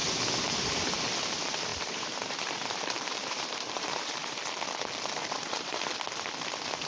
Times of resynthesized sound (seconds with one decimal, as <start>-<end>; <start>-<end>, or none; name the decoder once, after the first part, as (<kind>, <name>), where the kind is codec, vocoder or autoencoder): 1.7-4.4 (vocoder, BigVGAN v2); 5.2-5.9